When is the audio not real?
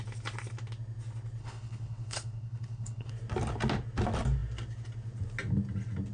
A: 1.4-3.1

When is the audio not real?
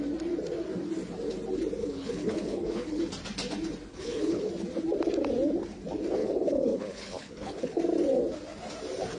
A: 1.8-3.0; 3.9-4.5; 6.2-7.8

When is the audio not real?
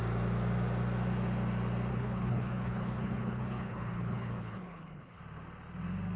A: 1.9-5.2